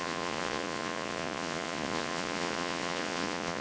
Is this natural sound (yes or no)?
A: no